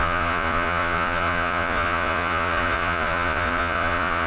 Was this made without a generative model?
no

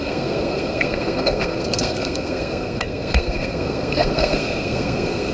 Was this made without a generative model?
no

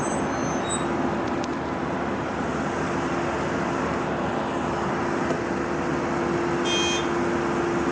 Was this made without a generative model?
yes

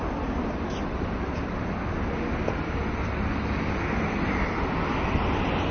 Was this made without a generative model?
yes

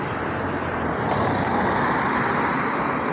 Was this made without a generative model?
yes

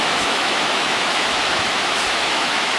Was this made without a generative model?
no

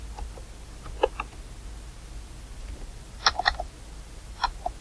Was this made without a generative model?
yes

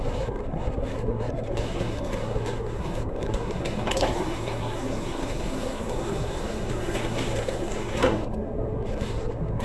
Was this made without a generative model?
no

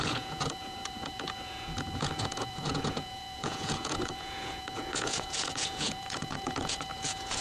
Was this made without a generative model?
no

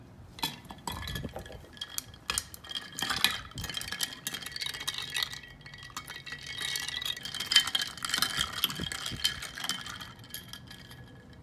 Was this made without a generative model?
yes